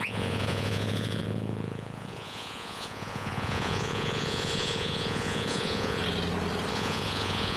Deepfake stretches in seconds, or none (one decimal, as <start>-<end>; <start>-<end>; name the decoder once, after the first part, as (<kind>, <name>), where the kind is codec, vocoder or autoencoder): 0.0-6.0 (vocoder, Vocos); 6.7-7.6